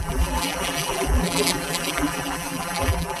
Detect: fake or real fake